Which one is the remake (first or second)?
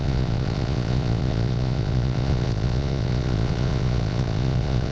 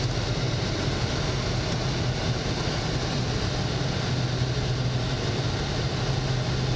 first